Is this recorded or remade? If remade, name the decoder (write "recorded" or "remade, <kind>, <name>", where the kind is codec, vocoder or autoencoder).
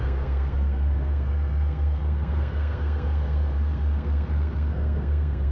remade, codec, SNAC